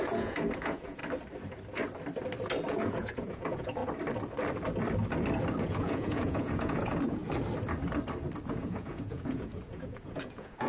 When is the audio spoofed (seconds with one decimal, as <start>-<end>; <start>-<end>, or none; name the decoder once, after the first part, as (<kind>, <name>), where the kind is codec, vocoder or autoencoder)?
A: 0.0-1.0 (vocoder, Vocos); 2.7-3.8; 5.6-7.2; 8.5-10.7